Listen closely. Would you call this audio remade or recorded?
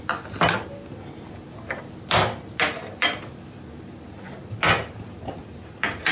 recorded